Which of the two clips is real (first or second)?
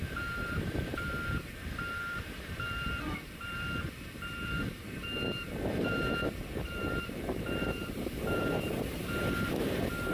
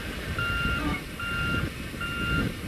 second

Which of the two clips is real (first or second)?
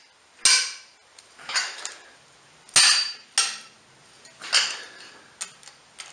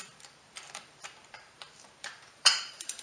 first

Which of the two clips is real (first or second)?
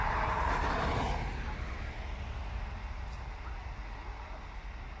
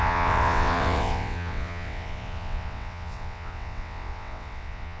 first